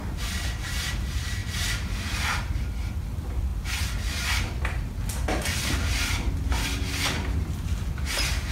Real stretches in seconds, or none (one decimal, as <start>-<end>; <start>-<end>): 0.0-8.5